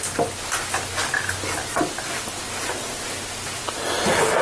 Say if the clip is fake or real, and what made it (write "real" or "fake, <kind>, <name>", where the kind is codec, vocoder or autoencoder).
real